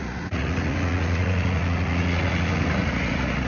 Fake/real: fake